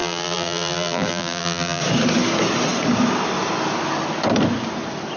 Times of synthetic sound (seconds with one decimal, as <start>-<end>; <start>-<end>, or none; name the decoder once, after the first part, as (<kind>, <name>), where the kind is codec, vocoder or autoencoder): 0.0-1.8 (vocoder, BigVGAN v2)